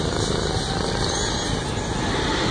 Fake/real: real